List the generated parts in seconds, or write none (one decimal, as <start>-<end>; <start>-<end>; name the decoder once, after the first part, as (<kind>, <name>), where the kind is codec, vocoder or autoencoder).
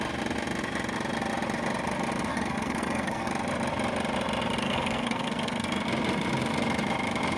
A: 2.3-3.3 (codec, SNAC); 4.6-5.8